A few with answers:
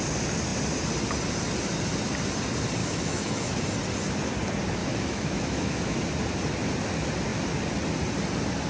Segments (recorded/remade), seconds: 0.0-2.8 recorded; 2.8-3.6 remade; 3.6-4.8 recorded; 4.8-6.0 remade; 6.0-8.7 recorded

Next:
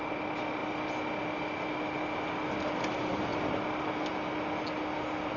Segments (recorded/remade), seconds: 0.0-5.4 recorded

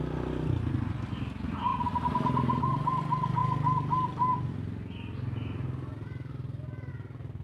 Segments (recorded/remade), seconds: 0.0-7.4 recorded